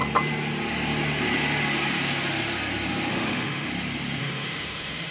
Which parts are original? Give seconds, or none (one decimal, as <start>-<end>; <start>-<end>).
0.0-3.1; 3.7-4.2